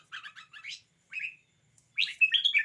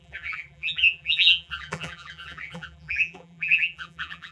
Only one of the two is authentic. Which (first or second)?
first